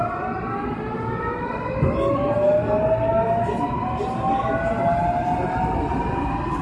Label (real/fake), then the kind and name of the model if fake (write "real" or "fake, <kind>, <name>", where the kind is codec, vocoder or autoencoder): real